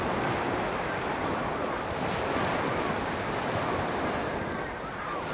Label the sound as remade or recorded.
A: recorded